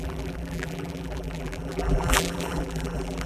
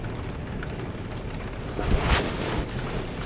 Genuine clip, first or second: second